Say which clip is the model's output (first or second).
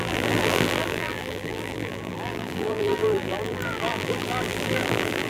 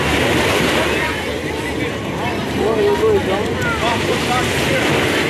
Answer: first